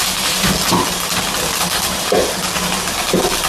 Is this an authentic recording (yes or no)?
yes